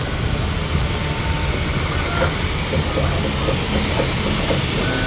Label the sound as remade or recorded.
recorded